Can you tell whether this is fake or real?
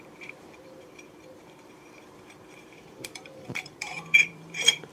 fake